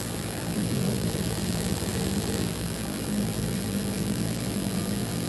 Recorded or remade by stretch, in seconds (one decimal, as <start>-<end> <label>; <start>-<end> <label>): 0.0-5.3 remade